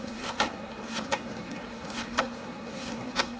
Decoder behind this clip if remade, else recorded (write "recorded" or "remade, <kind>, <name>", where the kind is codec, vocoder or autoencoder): remade, codec, SNAC